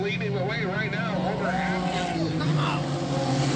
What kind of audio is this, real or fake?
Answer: real